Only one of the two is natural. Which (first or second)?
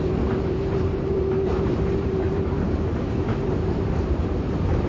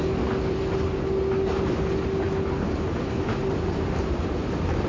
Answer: second